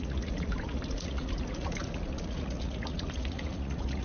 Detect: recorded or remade remade